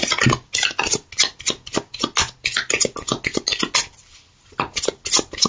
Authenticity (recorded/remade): recorded